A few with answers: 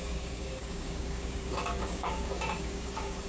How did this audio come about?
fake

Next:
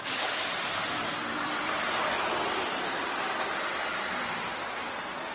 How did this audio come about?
fake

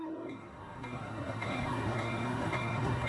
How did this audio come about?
fake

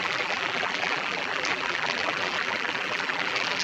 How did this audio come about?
fake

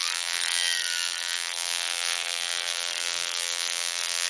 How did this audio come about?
fake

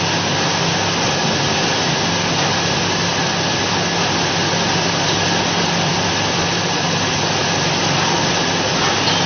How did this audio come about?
real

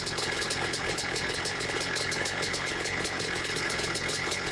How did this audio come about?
fake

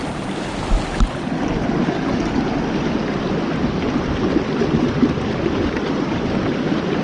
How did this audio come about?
real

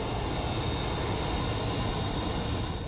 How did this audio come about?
real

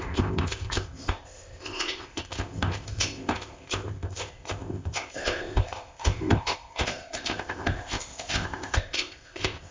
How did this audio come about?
fake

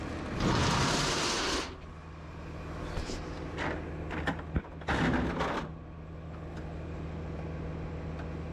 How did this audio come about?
real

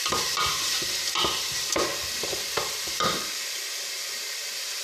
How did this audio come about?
fake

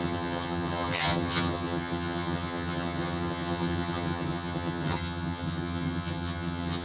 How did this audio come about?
fake